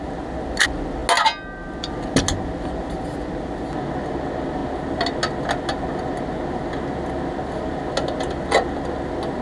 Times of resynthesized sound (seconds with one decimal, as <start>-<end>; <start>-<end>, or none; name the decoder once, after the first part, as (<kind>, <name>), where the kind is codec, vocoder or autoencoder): none